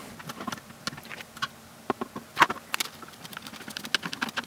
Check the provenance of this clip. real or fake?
real